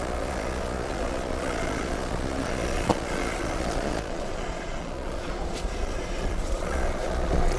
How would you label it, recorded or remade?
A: remade